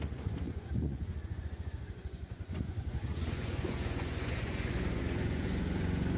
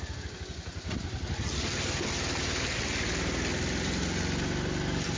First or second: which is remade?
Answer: first